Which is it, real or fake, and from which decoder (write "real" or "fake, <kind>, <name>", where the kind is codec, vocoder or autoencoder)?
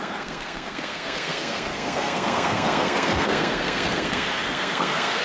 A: fake, codec, SNAC